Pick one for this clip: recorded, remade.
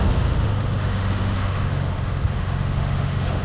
remade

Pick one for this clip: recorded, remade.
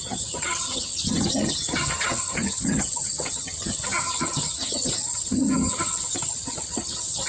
remade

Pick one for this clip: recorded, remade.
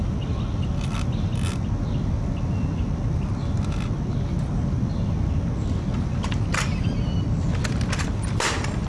recorded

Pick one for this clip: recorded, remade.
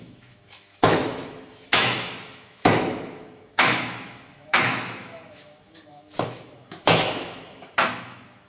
remade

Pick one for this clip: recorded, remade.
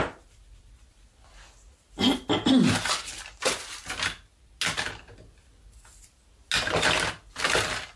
recorded